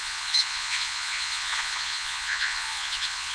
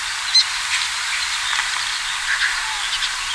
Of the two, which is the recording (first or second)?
second